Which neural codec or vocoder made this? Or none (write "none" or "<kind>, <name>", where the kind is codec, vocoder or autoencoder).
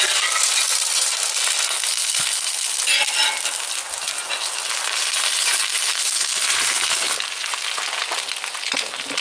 none